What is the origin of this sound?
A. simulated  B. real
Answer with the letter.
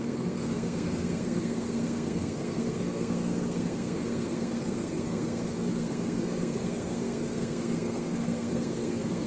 A